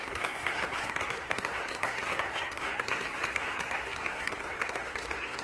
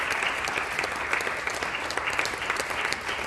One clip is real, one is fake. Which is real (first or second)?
second